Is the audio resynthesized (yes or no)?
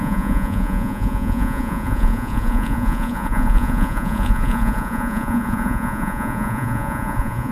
yes